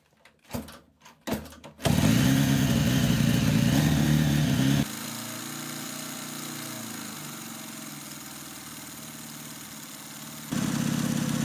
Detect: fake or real real